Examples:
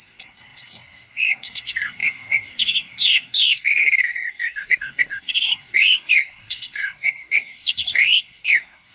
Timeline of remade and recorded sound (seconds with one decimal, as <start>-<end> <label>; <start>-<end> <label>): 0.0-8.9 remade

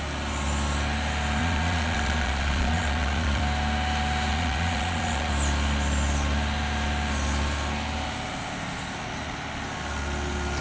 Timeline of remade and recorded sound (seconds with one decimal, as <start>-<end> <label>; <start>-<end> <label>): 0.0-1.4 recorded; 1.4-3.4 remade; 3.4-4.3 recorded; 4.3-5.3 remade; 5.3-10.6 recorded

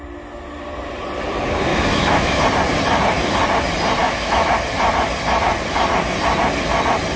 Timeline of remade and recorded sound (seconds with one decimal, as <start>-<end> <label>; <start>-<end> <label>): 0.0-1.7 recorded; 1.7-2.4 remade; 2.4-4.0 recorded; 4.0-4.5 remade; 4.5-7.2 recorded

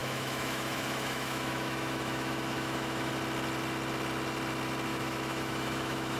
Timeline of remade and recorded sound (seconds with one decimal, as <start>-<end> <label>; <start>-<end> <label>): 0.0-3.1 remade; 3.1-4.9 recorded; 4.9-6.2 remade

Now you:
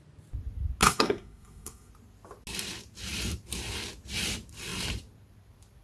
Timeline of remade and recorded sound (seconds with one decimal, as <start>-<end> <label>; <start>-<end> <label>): 0.0-0.8 recorded; 0.8-1.9 remade; 1.9-5.8 recorded